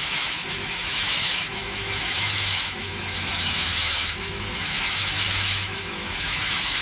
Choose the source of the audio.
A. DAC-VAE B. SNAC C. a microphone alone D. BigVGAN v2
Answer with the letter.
A